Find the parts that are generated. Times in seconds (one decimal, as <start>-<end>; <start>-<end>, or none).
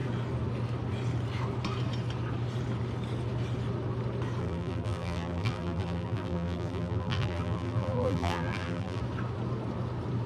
4.4-9.0